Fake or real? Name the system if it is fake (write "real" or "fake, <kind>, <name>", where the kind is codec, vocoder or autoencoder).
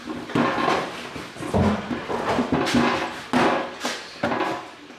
real